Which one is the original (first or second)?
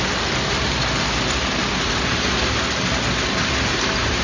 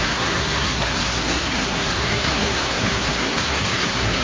first